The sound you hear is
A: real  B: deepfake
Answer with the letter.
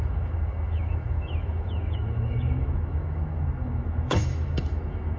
B